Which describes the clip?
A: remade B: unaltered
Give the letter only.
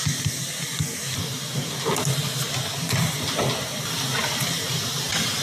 B